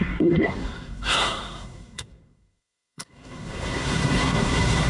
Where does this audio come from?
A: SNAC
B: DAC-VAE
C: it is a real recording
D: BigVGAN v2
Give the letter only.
A